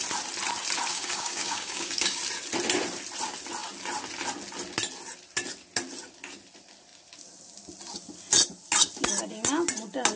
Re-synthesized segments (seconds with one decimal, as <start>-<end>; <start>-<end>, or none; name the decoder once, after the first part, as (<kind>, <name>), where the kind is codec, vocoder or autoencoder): 0.9-2.2 (codec, DAC)